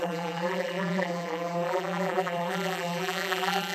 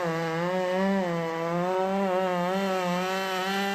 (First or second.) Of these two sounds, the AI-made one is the first